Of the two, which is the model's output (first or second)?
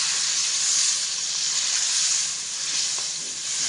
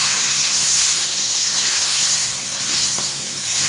second